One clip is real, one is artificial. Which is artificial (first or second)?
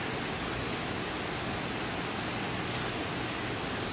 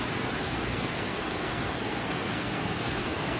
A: second